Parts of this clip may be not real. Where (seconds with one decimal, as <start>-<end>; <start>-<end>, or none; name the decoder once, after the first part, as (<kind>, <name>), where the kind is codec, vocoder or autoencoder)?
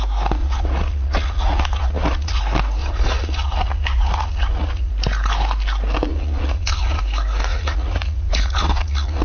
0.4-2.4 (vocoder, Vocos); 2.8-4.9; 6.1-7.0; 7.5-9.2